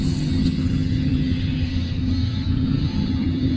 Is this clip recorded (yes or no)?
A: no